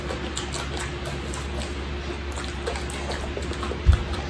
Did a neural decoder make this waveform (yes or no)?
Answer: no